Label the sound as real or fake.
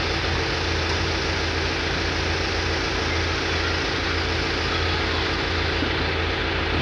real